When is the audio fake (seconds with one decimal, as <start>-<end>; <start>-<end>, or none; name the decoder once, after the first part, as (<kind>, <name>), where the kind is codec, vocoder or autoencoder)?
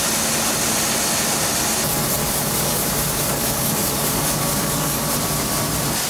2.2-5.0 (codec, DAC)